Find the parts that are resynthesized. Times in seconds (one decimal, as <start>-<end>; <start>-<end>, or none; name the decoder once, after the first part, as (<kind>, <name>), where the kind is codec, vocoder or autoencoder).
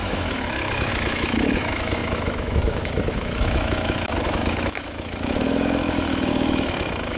0.0-7.2 (autoencoder, DAC-VAE)